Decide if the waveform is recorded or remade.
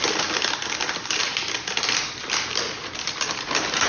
recorded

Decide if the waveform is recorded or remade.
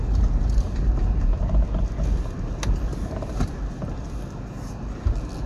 recorded